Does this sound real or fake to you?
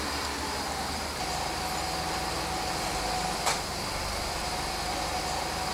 real